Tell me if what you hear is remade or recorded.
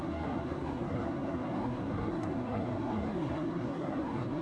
remade